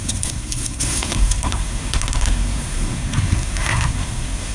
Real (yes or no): no